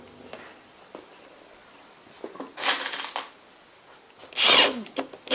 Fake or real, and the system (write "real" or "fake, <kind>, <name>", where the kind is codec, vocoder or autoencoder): real